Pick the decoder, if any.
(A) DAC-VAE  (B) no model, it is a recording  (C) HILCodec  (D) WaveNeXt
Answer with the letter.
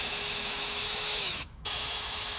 A